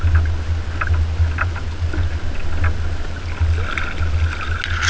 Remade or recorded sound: recorded